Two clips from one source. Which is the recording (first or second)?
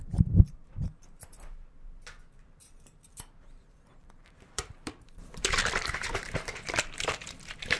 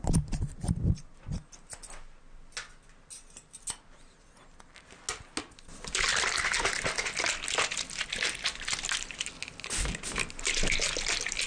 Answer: second